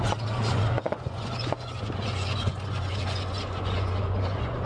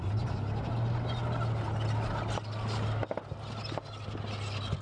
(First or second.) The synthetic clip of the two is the first